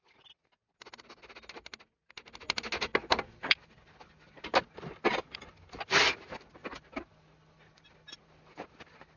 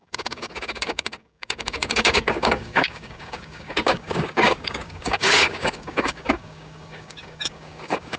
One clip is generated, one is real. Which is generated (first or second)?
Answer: second